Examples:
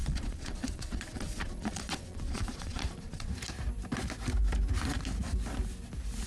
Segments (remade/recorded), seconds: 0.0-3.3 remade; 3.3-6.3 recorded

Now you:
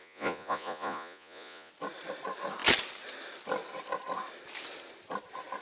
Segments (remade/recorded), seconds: 0.0-1.7 remade; 1.7-5.6 recorded

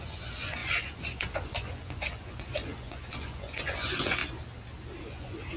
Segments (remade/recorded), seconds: 0.0-4.2 remade; 4.2-5.0 recorded; 5.0-5.6 remade

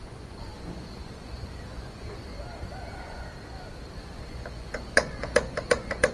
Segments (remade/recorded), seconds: 0.0-2.3 remade; 2.3-2.9 recorded; 2.9-3.3 remade; 3.3-4.0 recorded; 4.0-6.1 remade

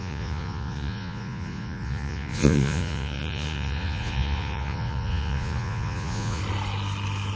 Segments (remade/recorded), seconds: 0.0-6.4 remade; 6.4-7.4 recorded

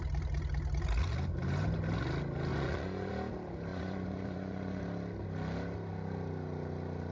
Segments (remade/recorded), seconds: 0.0-2.5 recorded; 2.5-3.1 remade; 3.1-3.7 recorded; 3.7-4.8 remade; 4.8-7.1 recorded

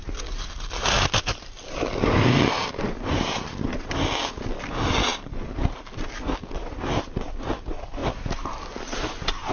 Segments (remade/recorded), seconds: 0.0-9.5 recorded

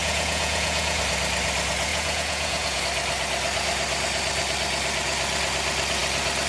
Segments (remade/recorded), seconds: 0.0-1.0 remade; 1.0-1.9 recorded; 1.9-2.8 remade; 2.8-6.5 recorded